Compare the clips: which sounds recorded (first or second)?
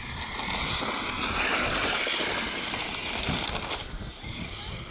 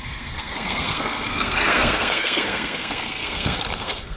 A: first